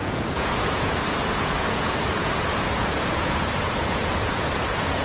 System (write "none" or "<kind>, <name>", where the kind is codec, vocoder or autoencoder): vocoder, Vocos